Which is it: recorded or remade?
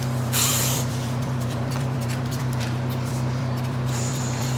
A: remade